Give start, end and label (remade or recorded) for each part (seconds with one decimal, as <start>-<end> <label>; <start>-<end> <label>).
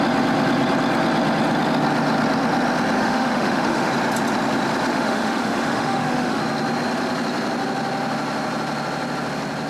0.0-3.0 recorded; 3.0-3.9 remade; 3.9-4.9 recorded; 4.9-6.4 remade; 6.4-9.7 recorded